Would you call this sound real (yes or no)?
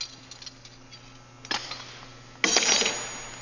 yes